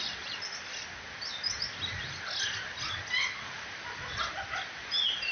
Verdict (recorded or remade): recorded